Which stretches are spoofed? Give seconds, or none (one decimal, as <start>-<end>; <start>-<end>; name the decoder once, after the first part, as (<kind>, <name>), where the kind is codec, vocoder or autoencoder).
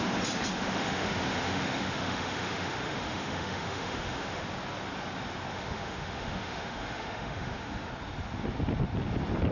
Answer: 0.5-4.4 (autoencoder, DAC-VAE); 5.5-7.9